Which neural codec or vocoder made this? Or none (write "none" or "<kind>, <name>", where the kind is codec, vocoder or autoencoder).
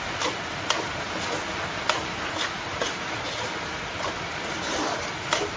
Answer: none